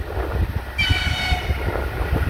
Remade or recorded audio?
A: recorded